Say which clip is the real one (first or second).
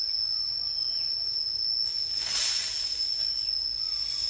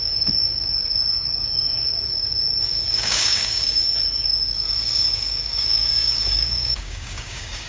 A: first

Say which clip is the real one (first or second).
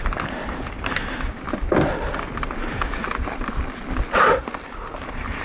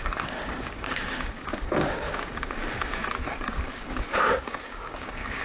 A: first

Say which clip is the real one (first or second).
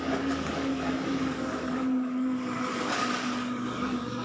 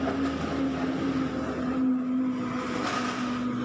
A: second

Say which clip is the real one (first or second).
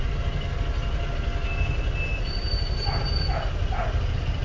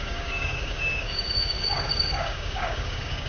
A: first